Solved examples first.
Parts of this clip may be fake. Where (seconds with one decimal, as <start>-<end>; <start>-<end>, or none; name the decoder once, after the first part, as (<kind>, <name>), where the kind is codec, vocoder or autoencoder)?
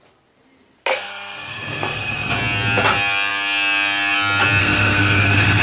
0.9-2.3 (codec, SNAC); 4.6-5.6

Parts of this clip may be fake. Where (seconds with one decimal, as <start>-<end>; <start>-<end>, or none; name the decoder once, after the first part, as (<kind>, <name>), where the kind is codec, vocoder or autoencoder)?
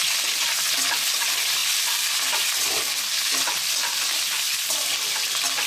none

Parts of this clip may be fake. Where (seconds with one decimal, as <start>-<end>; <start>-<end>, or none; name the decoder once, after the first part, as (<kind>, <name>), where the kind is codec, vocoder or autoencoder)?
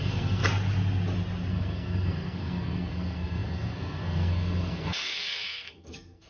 0.0-0.4 (codec, SNAC); 1.5-6.3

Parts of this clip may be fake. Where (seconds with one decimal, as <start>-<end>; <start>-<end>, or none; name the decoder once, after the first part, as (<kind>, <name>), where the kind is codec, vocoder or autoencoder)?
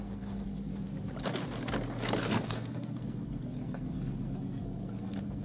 0.0-0.7 (codec, SNAC); 2.3-5.4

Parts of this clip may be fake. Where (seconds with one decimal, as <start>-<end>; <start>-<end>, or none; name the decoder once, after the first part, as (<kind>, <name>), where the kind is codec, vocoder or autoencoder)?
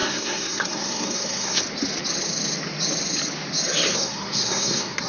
0.0-1.6 (codec, SNAC); 3.9-5.1